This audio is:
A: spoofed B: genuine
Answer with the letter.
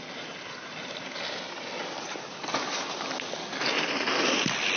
B